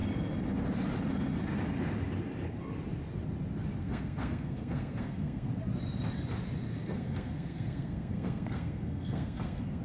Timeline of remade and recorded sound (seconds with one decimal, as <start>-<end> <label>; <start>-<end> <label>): 0.0-3.8 recorded; 3.8-5.5 remade; 5.5-6.7 recorded; 6.7-9.8 remade